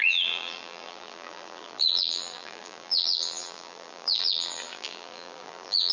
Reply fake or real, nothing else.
fake